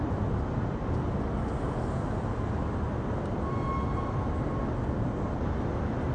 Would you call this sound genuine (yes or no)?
yes